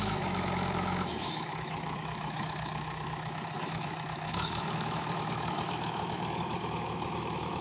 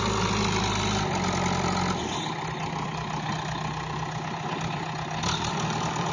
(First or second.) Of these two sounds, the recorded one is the second